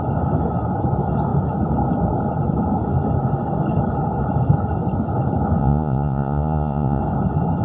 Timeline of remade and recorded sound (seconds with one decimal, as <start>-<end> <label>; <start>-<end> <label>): 0.0-5.6 recorded; 5.6-7.0 remade; 7.0-7.6 recorded